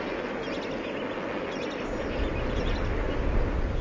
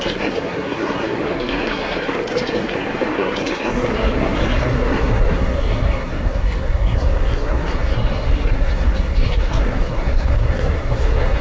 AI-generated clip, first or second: second